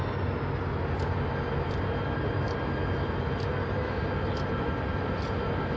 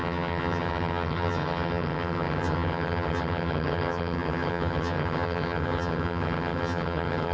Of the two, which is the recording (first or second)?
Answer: first